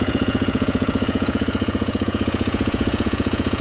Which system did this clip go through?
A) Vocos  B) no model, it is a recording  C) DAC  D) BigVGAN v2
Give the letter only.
A